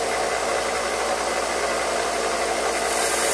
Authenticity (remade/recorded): recorded